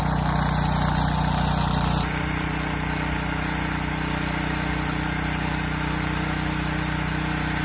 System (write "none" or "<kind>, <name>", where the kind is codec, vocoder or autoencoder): none